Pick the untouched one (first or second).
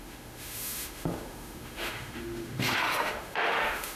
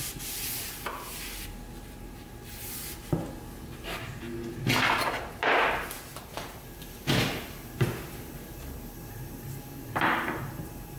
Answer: second